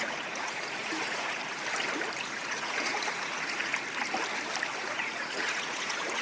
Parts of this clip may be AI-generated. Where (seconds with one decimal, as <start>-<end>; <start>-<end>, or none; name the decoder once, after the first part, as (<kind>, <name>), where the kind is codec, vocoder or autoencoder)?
0.0-1.4 (vocoder, Vocos); 2.2-3.7; 4.8-6.2